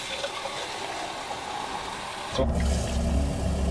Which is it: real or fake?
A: real